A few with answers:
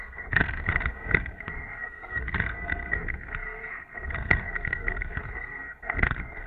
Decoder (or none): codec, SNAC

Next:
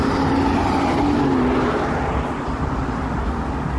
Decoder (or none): none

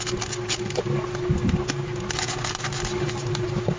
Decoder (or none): none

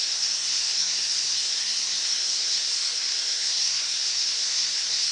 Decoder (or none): codec, SNAC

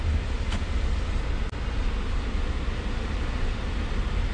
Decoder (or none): none